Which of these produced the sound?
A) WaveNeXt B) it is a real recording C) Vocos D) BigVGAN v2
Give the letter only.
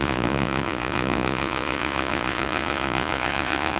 C